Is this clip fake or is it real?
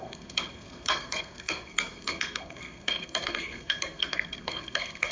fake